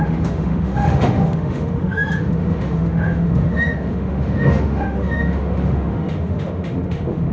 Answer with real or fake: fake